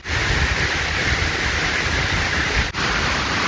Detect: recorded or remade recorded